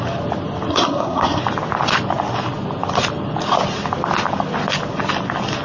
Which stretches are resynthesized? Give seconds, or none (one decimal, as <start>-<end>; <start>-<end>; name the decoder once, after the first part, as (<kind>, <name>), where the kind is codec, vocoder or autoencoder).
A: 0.7-1.4 (codec, SNAC)